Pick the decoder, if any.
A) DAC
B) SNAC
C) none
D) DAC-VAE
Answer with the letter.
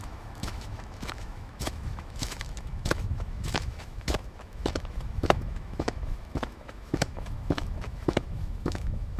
D